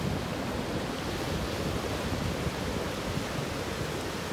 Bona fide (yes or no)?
yes